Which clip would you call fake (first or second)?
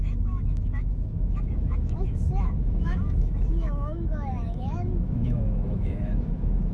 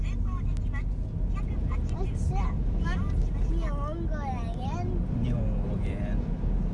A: first